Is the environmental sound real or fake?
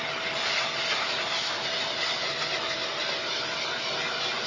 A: real